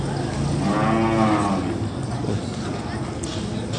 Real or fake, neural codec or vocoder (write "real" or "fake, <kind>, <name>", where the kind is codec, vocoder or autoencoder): real